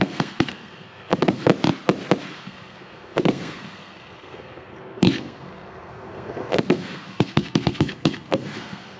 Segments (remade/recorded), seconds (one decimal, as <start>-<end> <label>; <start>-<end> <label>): 0.0-1.5 remade; 1.5-2.2 recorded; 2.2-9.0 remade

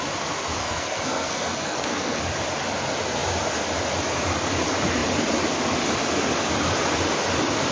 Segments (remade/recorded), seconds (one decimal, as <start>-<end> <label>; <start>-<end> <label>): 0.0-0.6 recorded; 0.6-2.2 remade; 2.2-7.7 recorded